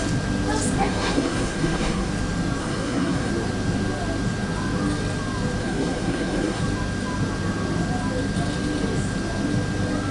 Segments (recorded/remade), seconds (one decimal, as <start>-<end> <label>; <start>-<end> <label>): 0.0-0.8 recorded; 0.8-2.1 remade; 2.1-2.6 recorded; 2.6-3.3 remade; 3.3-5.6 recorded; 5.6-6.6 remade; 6.6-10.1 recorded